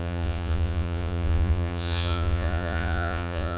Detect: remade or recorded remade